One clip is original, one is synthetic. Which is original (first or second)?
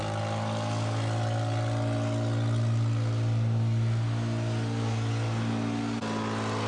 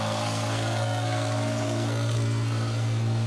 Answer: first